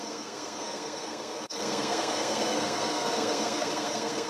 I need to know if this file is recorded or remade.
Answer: remade